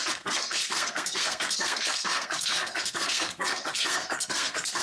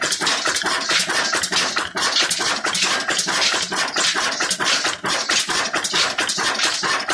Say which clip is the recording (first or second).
second